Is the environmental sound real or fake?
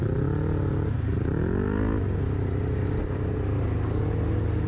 real